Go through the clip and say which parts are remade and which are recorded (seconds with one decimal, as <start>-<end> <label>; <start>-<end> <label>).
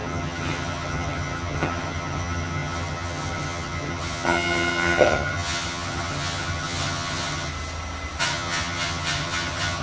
0.0-7.5 remade; 7.5-8.2 recorded; 8.2-9.8 remade